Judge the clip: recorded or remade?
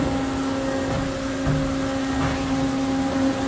recorded